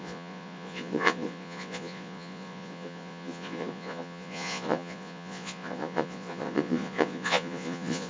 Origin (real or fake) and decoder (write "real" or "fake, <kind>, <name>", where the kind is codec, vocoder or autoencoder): fake, vocoder, Vocos